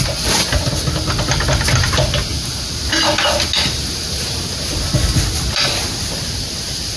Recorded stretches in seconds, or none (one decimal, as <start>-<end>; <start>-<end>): 0.0-7.0